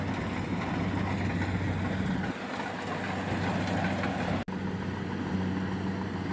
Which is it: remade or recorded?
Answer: recorded